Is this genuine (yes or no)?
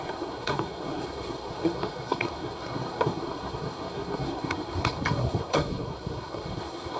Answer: no